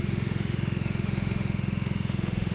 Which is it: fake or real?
fake